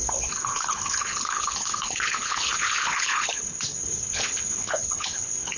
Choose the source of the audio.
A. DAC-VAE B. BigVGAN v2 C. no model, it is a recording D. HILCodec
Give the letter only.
D